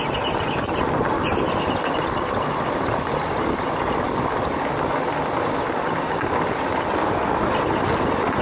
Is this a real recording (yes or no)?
yes